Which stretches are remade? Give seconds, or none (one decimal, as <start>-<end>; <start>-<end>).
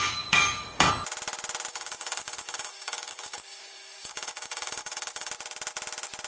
0.0-0.9; 1.7-5.3